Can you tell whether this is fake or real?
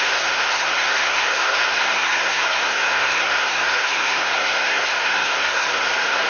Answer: fake